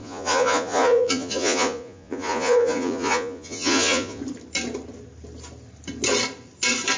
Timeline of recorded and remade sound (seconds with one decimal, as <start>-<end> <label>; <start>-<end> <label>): 0.0-4.2 remade; 4.2-7.0 recorded